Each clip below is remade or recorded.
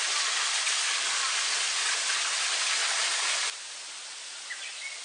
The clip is recorded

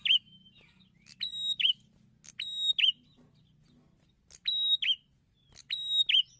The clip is recorded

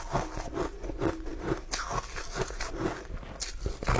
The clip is recorded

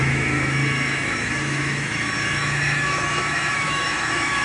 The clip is remade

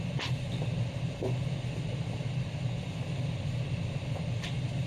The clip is recorded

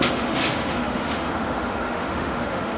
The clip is remade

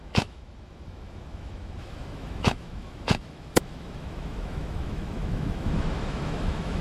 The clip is remade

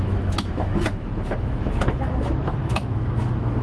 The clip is remade